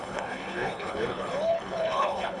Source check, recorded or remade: remade